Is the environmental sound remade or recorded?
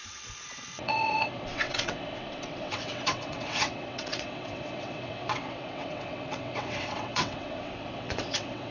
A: remade